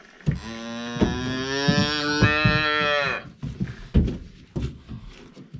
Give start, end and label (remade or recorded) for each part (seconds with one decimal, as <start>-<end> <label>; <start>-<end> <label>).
0.0-5.6 recorded